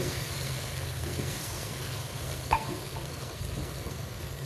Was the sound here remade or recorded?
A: remade